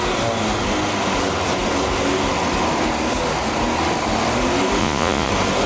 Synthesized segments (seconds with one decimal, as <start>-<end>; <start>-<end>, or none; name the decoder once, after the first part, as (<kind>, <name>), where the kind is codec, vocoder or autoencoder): 4.8-5.3 (vocoder, Vocos)